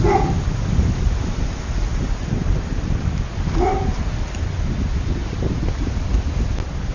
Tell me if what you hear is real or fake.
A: real